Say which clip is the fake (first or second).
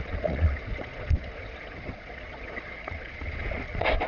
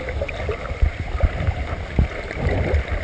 first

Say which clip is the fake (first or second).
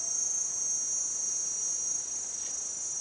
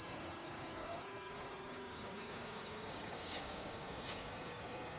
second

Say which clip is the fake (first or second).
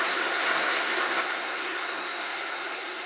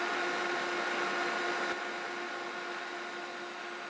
first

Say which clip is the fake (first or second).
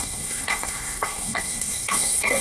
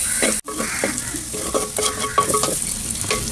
first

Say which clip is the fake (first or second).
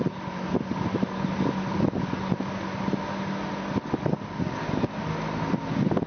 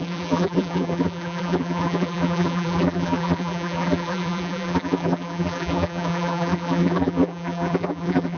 second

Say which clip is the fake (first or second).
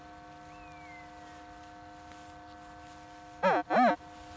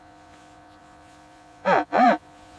second